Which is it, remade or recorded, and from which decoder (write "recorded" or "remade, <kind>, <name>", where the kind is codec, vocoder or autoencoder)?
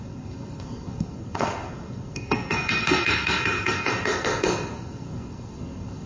remade, codec, SNAC